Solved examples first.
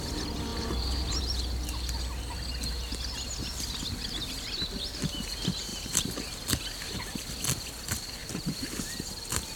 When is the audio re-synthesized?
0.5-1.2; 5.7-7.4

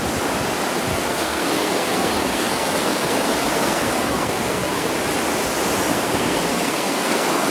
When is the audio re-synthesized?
0.9-4.9; 5.9-7.5